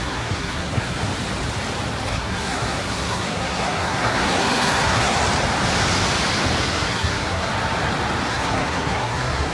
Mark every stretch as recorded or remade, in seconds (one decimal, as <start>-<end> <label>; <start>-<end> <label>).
0.0-1.1 remade; 1.1-2.1 recorded; 2.1-5.2 remade; 5.2-6.6 recorded; 6.6-7.5 remade; 7.5-8.3 recorded; 8.3-9.5 remade